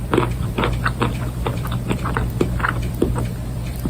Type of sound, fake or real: fake